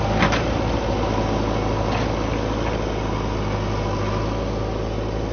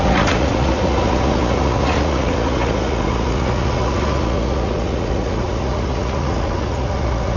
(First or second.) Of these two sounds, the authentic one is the first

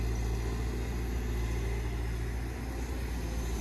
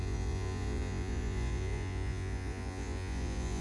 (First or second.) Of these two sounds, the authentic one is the first